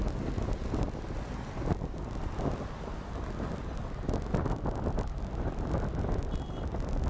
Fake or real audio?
real